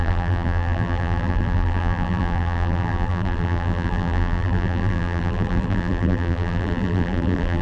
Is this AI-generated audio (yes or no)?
yes